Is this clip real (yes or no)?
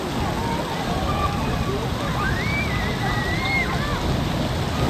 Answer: yes